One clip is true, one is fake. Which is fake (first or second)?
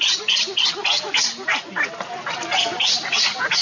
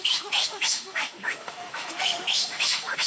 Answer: second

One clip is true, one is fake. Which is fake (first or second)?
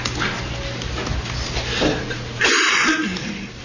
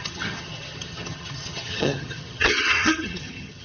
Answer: second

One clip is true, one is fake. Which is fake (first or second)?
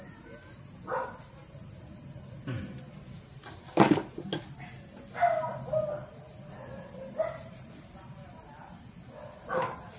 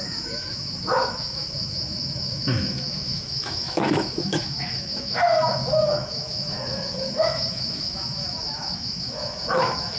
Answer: second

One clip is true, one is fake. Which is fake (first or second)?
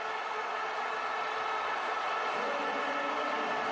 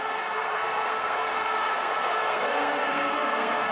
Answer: second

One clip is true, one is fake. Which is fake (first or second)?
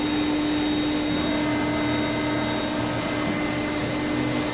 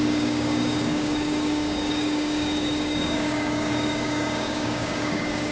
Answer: second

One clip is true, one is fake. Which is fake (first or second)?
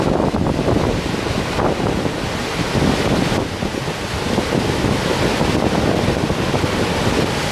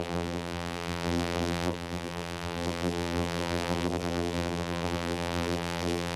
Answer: second